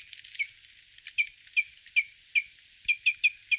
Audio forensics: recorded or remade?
recorded